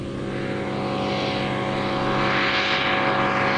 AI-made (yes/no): no